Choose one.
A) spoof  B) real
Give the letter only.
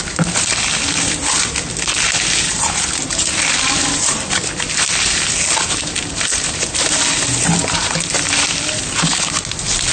B